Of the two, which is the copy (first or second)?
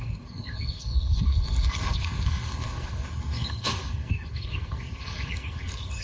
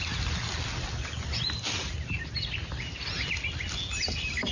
first